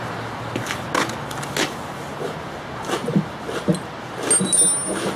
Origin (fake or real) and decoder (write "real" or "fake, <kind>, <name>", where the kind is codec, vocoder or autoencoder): real